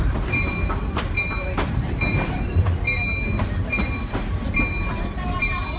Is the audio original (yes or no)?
no